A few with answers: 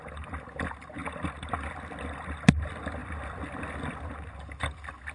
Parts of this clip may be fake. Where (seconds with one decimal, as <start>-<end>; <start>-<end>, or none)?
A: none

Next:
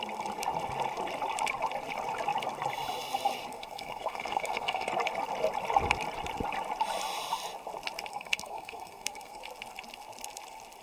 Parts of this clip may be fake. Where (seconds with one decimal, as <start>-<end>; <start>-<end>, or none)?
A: 3.5-4.9; 8.1-9.4

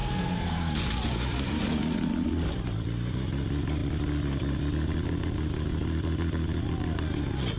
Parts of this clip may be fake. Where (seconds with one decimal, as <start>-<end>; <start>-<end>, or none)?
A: 0.0-0.7